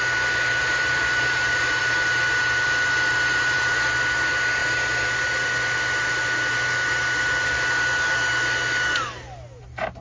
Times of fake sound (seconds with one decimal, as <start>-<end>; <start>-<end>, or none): 0.6-1.8; 3.3-3.9